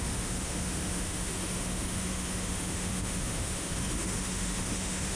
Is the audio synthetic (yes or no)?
yes